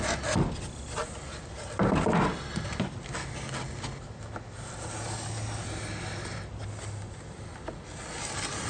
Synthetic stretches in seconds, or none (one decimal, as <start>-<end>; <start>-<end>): none